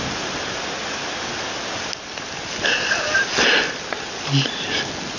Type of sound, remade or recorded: recorded